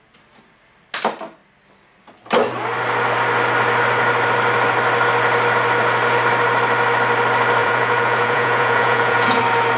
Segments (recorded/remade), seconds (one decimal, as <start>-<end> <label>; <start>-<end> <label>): 0.0-7.6 recorded; 7.6-9.4 remade; 9.4-9.8 recorded